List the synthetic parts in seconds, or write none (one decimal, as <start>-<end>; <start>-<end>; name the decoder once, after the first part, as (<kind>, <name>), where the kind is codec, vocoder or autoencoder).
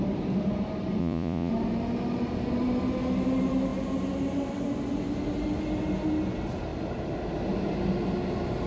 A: 1.0-1.5 (vocoder, Vocos)